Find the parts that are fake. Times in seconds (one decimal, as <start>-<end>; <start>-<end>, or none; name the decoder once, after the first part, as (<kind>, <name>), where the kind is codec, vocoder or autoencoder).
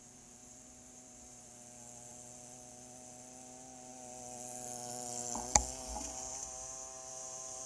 0.4-1.5 (vocoder, BigVGAN v2)